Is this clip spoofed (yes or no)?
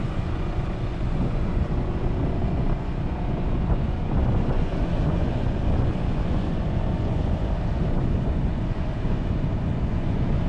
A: yes